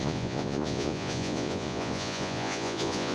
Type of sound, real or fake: fake